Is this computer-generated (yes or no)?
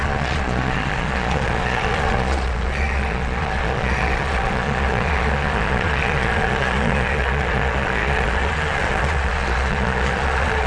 yes